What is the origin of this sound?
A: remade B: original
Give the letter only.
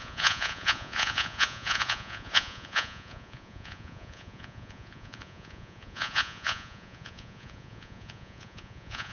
A